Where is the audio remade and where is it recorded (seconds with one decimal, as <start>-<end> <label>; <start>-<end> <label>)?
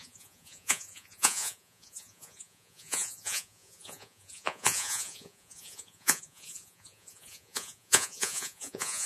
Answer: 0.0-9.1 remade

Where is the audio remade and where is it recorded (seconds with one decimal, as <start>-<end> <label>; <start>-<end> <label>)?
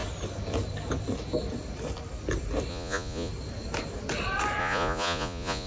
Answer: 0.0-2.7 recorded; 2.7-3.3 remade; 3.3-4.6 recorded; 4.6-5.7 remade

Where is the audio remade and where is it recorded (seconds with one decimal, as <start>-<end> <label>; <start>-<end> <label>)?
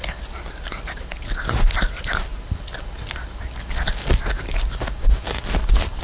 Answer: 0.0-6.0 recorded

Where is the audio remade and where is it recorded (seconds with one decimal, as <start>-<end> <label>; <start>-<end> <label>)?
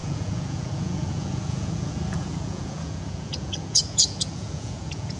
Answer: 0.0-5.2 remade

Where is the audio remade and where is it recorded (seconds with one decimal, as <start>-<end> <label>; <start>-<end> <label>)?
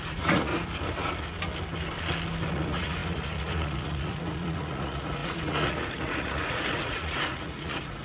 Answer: 0.0-0.5 remade; 0.5-2.5 recorded; 2.5-8.0 remade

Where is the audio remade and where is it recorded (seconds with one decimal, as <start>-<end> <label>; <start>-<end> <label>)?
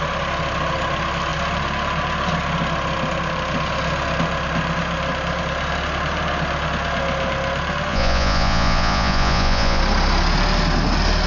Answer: 0.0-7.9 recorded; 7.9-9.8 remade; 9.8-11.3 recorded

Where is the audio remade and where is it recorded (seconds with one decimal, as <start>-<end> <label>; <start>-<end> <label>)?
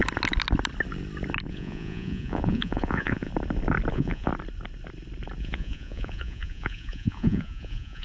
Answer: 0.0-1.5 recorded; 1.5-3.3 remade; 3.3-3.9 recorded; 3.9-4.3 remade; 4.3-5.4 recorded; 5.4-8.0 remade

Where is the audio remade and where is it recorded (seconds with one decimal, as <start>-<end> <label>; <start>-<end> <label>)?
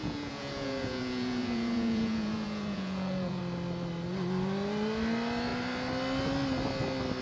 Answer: 0.0-3.4 remade; 3.4-7.2 recorded